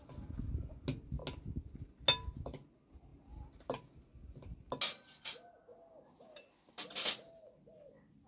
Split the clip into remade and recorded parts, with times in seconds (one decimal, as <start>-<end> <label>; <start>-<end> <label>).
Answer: 0.0-8.3 recorded